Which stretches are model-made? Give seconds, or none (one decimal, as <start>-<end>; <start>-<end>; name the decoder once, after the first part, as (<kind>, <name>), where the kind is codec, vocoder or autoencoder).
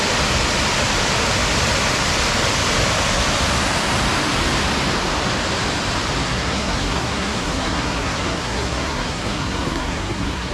6.2-10.5 (codec, SNAC)